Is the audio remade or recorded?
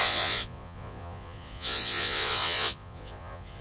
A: remade